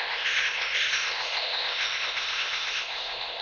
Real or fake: fake